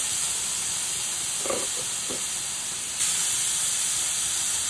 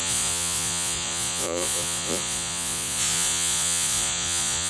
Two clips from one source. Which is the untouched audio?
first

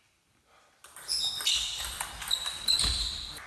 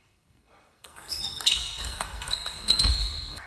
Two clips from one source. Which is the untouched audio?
first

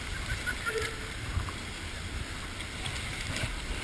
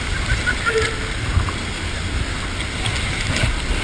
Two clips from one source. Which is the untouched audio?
second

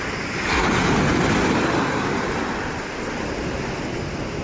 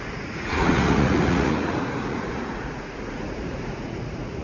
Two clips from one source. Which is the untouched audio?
first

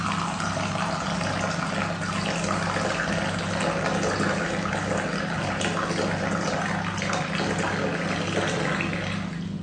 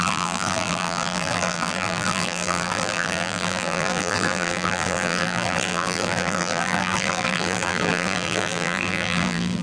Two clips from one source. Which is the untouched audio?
first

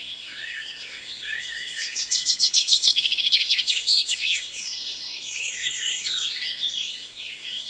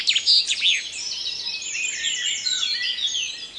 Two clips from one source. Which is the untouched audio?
second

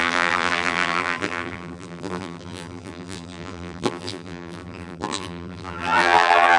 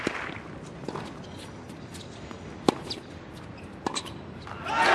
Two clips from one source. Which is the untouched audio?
second